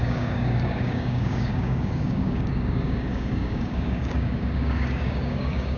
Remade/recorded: remade